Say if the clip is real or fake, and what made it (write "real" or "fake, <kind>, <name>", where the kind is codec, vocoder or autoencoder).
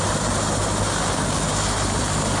real